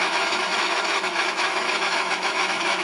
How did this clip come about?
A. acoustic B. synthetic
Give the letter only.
B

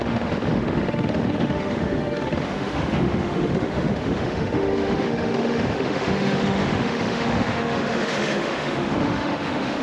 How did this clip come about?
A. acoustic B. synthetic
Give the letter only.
B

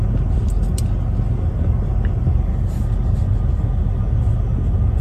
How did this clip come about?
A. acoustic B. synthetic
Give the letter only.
A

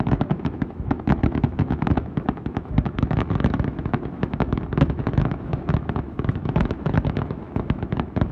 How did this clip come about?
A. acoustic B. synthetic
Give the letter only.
B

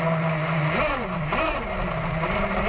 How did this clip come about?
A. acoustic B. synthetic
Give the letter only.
A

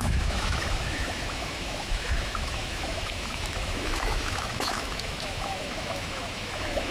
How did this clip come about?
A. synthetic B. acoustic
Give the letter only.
A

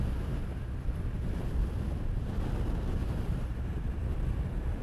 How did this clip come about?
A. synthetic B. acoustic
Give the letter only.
B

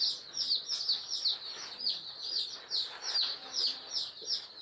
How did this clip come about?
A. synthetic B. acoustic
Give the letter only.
B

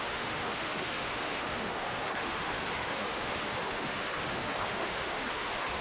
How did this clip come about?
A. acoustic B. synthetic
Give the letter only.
B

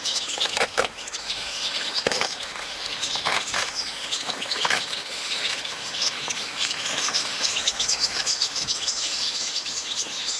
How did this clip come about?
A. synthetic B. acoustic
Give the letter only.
A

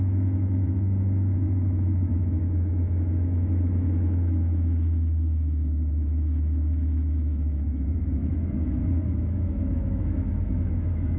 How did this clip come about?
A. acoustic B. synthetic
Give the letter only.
B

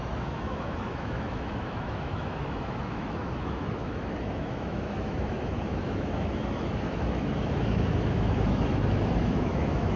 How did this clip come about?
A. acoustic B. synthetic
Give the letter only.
B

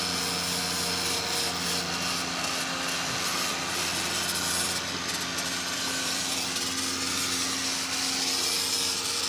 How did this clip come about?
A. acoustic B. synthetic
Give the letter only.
A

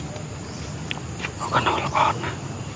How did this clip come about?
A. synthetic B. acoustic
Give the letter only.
B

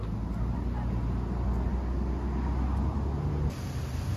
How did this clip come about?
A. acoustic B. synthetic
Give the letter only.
A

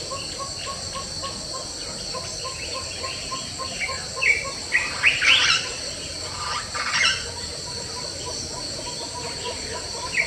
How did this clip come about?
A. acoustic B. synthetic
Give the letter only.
A